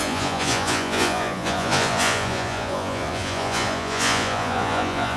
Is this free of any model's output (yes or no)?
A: no